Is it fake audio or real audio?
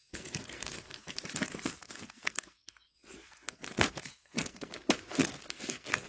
fake